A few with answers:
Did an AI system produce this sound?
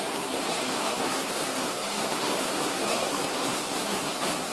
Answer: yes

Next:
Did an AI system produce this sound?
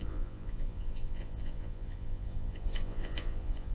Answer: yes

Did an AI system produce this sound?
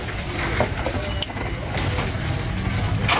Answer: no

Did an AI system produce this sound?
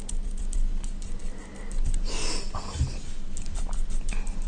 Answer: no